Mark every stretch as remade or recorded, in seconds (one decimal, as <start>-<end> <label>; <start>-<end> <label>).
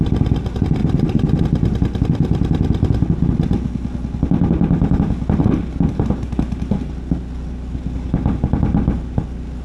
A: 0.0-0.8 recorded; 0.8-1.4 remade; 1.4-9.6 recorded